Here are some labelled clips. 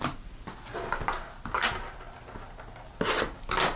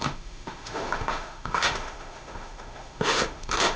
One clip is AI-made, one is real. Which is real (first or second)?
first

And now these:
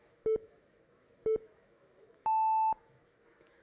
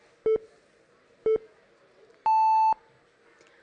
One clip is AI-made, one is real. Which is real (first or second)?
second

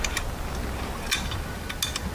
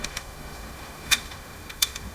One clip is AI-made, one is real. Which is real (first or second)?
first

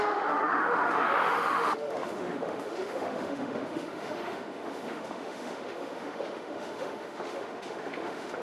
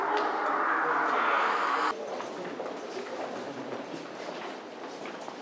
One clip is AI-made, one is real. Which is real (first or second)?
second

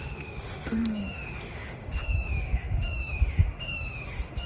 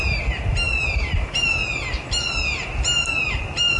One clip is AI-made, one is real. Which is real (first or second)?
second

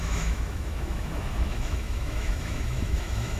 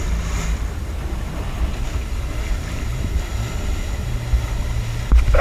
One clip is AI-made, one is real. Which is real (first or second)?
second